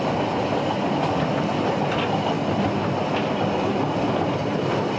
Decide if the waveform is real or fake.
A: real